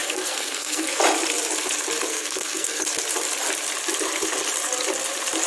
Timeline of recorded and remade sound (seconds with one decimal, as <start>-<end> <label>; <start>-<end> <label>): 0.0-1.0 remade; 1.0-2.1 recorded; 2.1-2.8 remade; 2.8-5.5 recorded